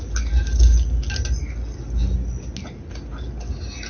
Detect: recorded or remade recorded